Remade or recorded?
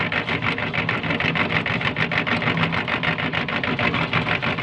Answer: recorded